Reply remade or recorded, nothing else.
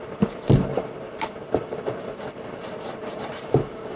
remade